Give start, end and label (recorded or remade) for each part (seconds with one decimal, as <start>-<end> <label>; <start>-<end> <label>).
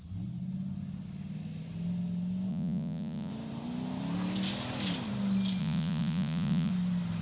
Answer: 0.0-2.5 recorded; 2.5-3.3 remade; 3.3-5.6 recorded; 5.6-6.7 remade; 6.7-7.2 recorded